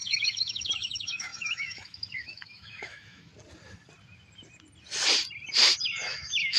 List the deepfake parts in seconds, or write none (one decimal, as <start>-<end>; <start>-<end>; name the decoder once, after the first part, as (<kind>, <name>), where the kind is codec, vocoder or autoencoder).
0.0-3.3 (autoencoder, DAC-VAE); 5.8-6.6